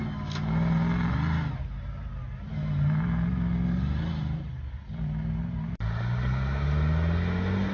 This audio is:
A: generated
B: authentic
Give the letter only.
B